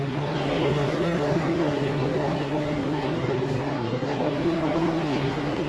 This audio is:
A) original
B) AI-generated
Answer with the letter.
B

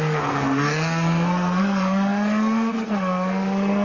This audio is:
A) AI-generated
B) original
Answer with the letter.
A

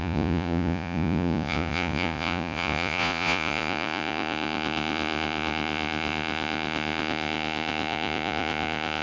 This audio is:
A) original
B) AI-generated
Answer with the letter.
B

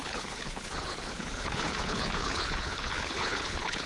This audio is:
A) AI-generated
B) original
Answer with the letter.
A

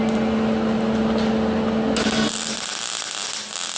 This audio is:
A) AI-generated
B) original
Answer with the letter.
B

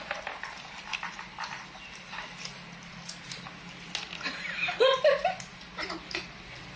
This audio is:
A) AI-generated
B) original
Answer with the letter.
B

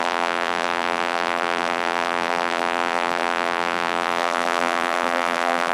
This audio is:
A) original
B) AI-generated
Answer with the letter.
B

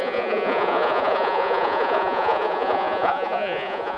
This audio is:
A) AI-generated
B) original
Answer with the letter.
A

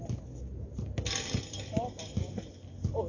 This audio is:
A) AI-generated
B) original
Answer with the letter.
B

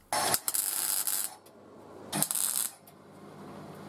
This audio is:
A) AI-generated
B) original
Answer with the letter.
B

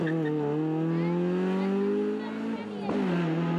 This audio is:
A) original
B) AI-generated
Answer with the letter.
A